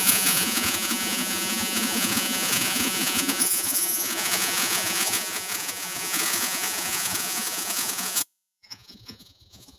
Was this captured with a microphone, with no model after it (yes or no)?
no